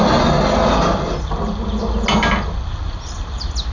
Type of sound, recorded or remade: recorded